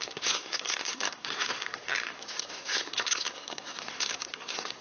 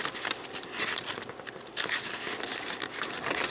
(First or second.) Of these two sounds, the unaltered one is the second